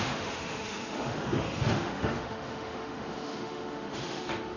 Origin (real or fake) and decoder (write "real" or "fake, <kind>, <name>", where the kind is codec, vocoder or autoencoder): fake, autoencoder, DAC-VAE